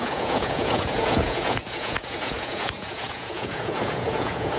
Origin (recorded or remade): remade